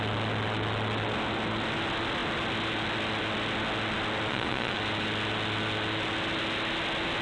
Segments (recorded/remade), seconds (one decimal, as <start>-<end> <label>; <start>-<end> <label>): 0.0-4.3 recorded; 4.3-4.8 remade; 4.8-7.2 recorded